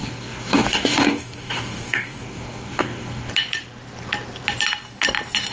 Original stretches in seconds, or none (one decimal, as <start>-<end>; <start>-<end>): 3.3-5.5